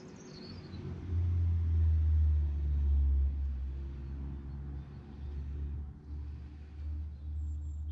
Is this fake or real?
real